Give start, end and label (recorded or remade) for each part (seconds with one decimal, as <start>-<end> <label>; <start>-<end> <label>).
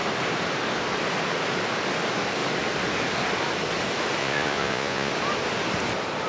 0.0-4.2 recorded; 4.2-5.1 remade; 5.1-6.3 recorded